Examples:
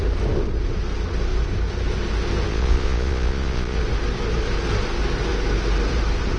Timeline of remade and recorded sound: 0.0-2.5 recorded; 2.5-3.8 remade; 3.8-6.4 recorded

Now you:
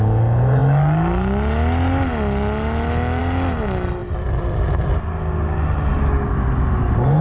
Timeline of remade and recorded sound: 0.0-7.2 recorded